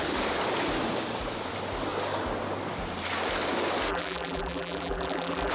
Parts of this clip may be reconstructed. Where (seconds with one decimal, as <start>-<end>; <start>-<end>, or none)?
3.9-5.5